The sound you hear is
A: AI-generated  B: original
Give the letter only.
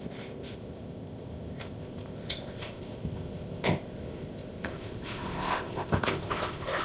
A